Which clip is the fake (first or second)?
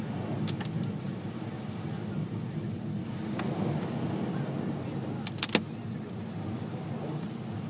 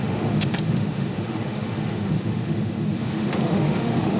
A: second